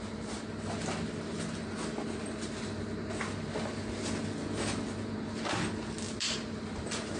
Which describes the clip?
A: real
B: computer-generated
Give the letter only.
A